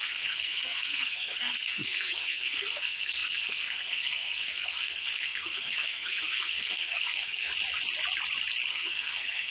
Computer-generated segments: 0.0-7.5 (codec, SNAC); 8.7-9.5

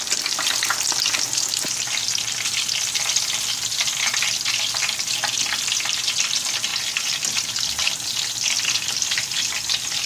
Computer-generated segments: none

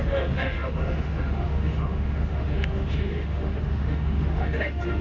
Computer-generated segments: 0.0-5.0 (autoencoder, DAC-VAE)

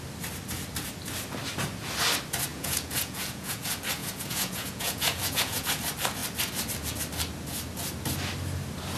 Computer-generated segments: 2.5-3.6 (vocoder, Vocos); 4.0-5.8

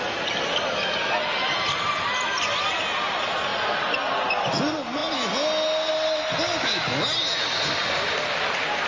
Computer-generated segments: 3.5-4.5 (vocoder, BigVGAN v2)

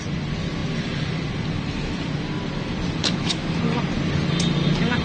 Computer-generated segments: 3.0-3.6 (autoencoder, DAC-VAE)

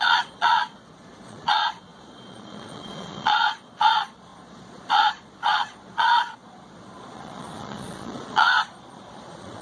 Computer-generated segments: 0.0-9.6 (vocoder, Vocos)